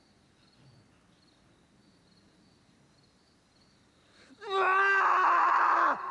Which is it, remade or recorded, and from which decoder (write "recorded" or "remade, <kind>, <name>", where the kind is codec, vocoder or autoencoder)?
recorded